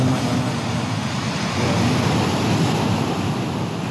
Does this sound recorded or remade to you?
recorded